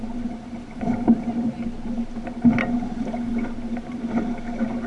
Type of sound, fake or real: real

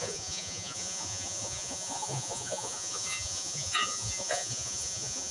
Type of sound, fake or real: fake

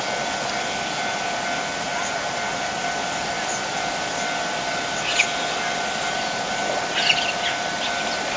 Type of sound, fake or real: real